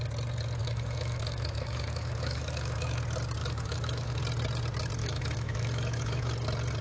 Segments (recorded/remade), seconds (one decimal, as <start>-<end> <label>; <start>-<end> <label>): 0.0-0.6 recorded; 0.6-3.0 remade; 3.0-3.4 recorded; 3.4-4.2 remade; 4.2-5.0 recorded; 5.0-6.3 remade; 6.3-6.8 recorded